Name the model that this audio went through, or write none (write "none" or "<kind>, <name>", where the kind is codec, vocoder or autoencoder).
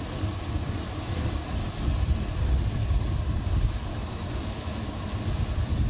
vocoder, BigVGAN v2